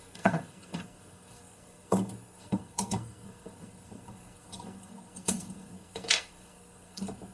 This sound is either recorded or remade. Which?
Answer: remade